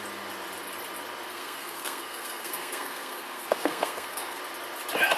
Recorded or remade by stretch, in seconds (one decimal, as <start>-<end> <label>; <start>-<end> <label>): 0.0-1.3 recorded; 1.3-4.4 remade; 4.4-5.2 recorded